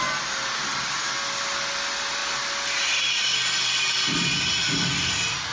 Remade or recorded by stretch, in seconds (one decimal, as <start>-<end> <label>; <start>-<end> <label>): 0.0-5.5 recorded